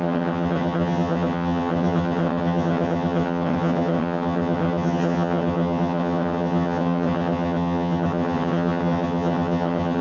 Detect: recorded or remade remade